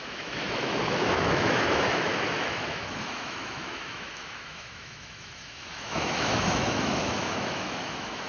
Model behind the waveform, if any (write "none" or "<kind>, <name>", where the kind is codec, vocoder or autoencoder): autoencoder, DAC-VAE